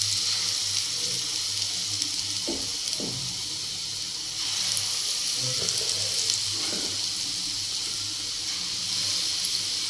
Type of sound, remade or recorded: recorded